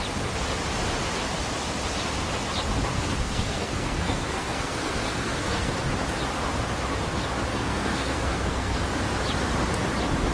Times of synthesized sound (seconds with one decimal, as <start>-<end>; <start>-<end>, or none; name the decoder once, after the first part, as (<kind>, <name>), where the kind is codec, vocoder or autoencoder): 2.9-5.7 (codec, SNAC); 7.5-8.8